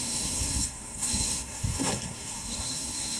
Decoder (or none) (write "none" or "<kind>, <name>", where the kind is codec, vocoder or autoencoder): codec, SNAC